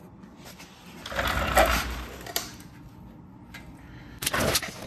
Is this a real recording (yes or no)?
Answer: yes